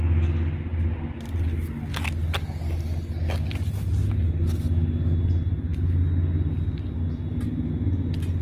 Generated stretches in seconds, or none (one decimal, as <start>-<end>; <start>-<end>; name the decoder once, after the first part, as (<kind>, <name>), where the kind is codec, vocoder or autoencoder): none